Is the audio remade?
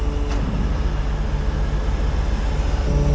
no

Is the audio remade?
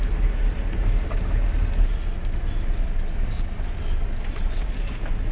no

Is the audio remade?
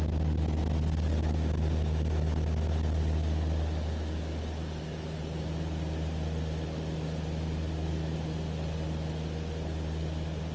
no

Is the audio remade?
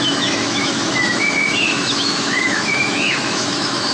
yes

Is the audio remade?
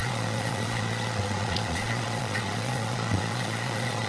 yes